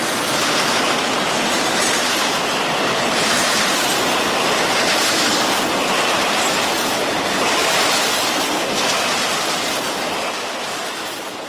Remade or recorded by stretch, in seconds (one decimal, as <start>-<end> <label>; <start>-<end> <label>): 0.0-3.8 remade; 3.8-7.1 recorded; 7.1-11.5 remade